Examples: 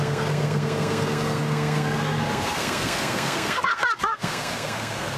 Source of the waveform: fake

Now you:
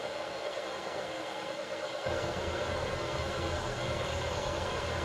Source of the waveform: fake